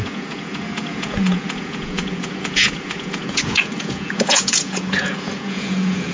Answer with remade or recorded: remade